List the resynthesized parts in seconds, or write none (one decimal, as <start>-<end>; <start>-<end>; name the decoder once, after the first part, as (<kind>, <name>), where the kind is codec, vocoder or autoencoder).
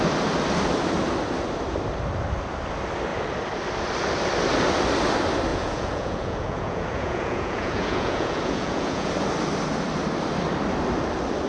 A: 5.5-9.1 (vocoder, Vocos)